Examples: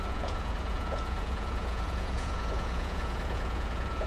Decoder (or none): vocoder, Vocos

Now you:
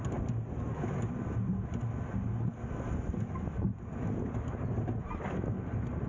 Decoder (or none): none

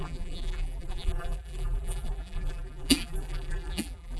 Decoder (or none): vocoder, BigVGAN v2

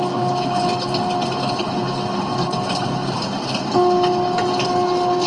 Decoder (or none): none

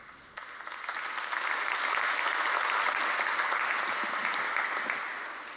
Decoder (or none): none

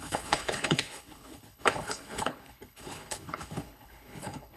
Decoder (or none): codec, HILCodec